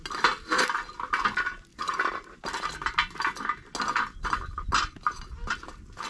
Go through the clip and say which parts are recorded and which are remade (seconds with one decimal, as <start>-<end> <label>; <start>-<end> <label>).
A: 0.0-1.7 recorded; 1.7-2.4 remade; 2.4-6.1 recorded